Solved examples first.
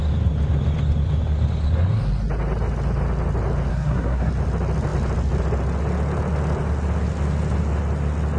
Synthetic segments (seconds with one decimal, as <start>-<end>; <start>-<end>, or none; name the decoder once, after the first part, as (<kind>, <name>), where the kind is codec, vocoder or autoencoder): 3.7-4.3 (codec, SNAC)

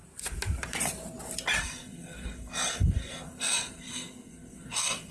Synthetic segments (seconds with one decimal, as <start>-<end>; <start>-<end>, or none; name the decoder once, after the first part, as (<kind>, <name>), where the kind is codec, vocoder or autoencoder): 1.6-5.1 (codec, SNAC)

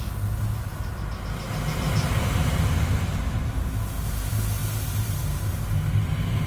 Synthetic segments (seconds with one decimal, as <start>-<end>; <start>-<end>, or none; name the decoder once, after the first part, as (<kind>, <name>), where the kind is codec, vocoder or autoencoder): none

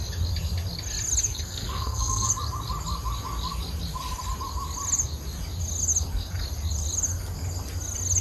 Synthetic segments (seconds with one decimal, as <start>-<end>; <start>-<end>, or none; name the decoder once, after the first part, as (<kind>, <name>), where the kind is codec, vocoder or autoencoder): 1.3-2.3 (codec, SNAC)

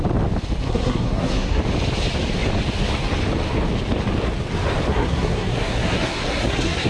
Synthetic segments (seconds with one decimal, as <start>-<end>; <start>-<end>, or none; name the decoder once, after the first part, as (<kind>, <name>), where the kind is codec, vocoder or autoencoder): 0.6-1.6 (codec, SNAC); 4.9-6.9

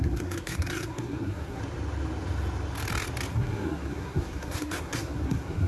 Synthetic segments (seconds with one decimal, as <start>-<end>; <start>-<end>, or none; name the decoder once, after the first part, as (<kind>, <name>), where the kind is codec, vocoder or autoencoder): 0.0-1.6 (codec, SNAC); 3.3-5.7

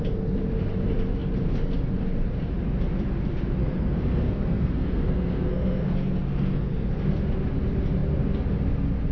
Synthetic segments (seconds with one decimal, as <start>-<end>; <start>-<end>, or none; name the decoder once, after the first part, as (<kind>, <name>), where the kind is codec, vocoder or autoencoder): 3.6-7.2 (codec, SNAC)